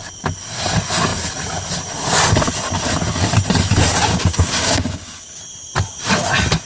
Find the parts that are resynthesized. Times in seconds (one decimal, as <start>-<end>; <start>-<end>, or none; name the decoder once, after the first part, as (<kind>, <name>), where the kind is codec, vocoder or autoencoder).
4.1-5.4 (codec, DAC)